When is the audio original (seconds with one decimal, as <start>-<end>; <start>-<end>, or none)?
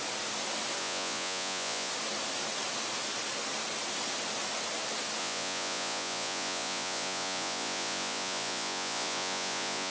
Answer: 0.0-0.8; 1.9-5.2